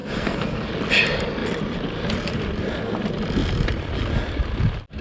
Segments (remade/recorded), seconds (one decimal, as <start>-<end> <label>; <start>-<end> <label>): 0.0-0.7 remade; 0.7-5.0 recorded